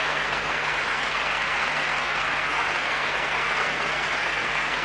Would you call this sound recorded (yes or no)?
no